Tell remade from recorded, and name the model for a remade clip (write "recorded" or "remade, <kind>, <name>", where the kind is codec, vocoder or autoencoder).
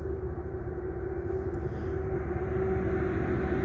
recorded